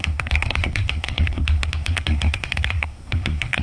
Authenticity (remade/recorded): remade